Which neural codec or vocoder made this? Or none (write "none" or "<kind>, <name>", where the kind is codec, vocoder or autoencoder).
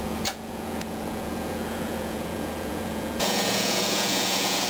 vocoder, Vocos